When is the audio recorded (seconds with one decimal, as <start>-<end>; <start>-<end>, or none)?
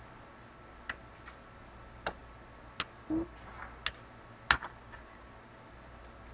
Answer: 0.0-6.3